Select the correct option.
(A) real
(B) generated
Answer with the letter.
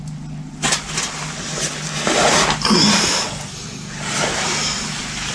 A